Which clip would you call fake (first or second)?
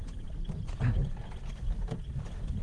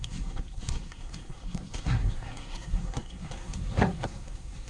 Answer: second